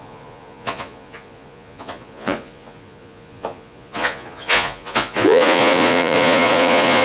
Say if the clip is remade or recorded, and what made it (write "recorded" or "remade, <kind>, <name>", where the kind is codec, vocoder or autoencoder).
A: remade, vocoder, Vocos